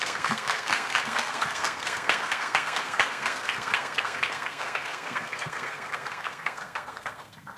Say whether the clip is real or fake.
fake